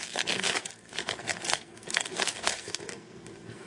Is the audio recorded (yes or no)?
no